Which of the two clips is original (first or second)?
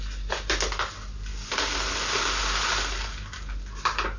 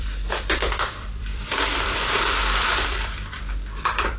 first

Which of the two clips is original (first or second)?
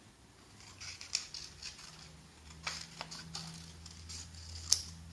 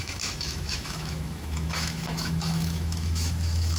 first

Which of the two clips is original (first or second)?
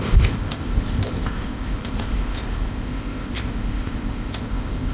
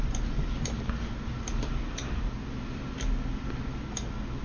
second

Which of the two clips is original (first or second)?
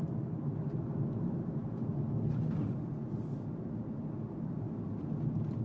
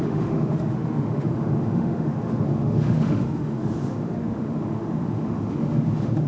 first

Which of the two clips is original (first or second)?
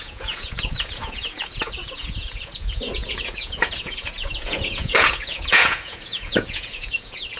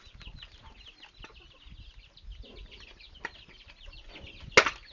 second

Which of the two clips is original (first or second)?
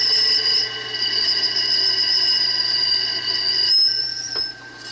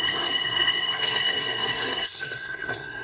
first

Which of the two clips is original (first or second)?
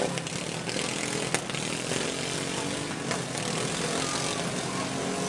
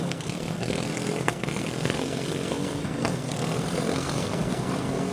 first